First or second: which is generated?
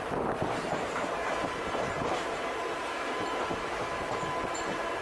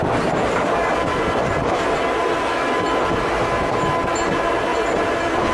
first